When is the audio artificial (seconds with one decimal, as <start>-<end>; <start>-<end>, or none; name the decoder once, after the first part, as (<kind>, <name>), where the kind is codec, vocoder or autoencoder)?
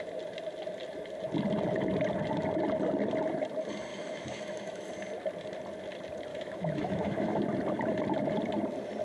3.9-4.9 (autoencoder, DAC-VAE); 6.3-7.4